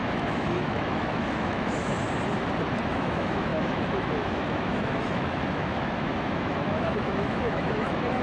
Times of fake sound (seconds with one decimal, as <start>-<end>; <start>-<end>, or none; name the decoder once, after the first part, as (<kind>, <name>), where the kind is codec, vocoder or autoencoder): 0.0-2.0 (autoencoder, DAC-VAE); 2.8-8.2